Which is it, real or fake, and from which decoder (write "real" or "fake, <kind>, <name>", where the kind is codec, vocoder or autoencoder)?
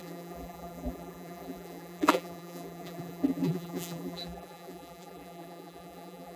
fake, vocoder, BigVGAN v2